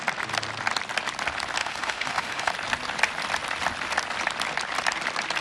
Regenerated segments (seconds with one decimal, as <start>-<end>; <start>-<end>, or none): 1.6-2.5